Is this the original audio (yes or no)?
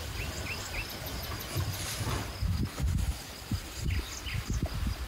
yes